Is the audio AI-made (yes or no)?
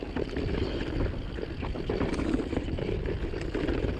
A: no